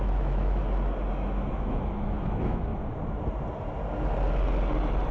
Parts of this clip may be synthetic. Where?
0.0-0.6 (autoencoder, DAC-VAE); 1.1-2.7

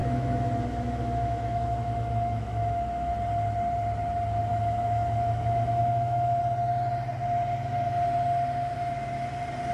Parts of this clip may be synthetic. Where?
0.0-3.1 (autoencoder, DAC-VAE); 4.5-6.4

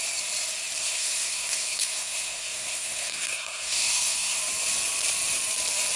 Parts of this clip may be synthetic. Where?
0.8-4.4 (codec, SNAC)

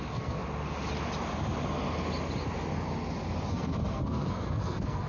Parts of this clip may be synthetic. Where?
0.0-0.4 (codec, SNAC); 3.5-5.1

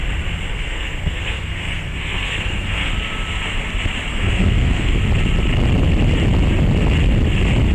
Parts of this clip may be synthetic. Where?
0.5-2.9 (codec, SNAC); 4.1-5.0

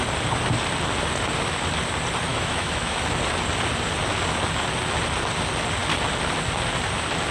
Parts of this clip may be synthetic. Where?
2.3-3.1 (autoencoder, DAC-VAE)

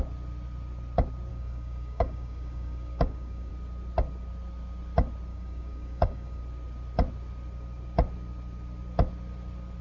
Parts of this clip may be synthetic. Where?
1.3-3.5 (codec, DAC); 5.3-6.4